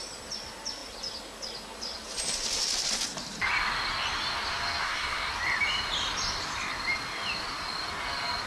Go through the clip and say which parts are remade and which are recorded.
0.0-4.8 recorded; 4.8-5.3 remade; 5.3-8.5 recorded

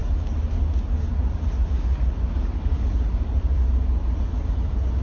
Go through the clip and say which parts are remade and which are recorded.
0.0-5.0 recorded

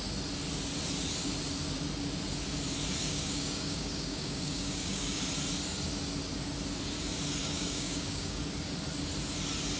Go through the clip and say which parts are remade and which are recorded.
0.0-3.0 recorded; 3.0-5.2 remade; 5.2-7.4 recorded; 7.4-8.4 remade; 8.4-9.8 recorded

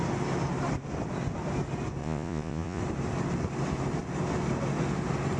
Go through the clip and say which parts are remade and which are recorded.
0.0-2.0 recorded; 2.0-2.8 remade; 2.8-5.4 recorded